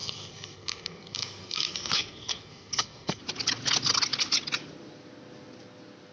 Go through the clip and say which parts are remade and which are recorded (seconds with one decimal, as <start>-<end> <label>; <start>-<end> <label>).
0.0-3.2 remade; 3.2-6.1 recorded